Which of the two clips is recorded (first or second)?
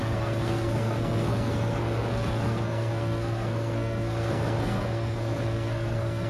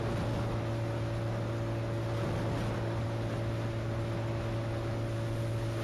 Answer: second